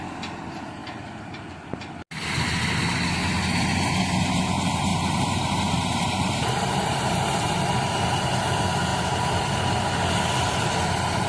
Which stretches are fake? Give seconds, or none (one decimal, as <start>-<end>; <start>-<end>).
4.9-7.1; 8.9-9.5